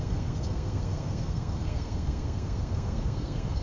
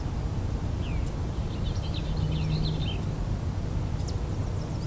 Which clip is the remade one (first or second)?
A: first